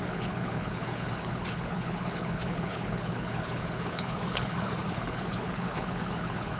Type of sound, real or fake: fake